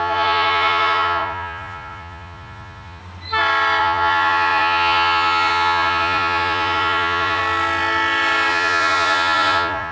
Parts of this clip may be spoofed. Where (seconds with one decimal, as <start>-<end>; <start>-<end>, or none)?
0.0-3.0; 3.8-7.4; 8.5-9.9